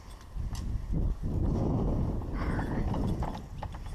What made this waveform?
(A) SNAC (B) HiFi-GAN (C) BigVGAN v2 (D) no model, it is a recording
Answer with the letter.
D